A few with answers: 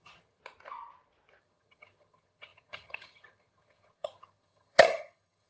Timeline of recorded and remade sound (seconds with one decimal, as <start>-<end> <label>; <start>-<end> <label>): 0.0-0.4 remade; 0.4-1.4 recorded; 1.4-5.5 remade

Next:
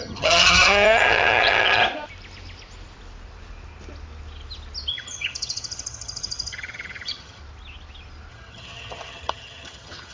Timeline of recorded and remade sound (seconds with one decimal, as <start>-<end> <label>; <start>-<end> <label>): 0.0-1.8 remade; 1.8-4.9 recorded; 4.9-7.4 remade; 7.4-8.3 recorded; 8.3-10.1 remade

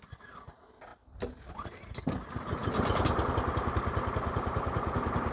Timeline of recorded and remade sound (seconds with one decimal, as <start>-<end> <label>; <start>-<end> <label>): 0.0-5.3 recorded

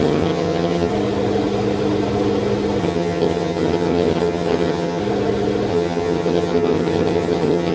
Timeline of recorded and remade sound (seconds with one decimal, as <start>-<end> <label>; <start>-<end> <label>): 0.0-0.9 remade; 0.9-2.8 recorded; 2.8-5.0 remade; 5.0-5.7 recorded; 5.7-7.7 remade